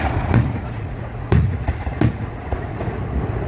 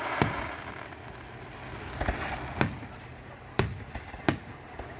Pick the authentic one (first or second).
second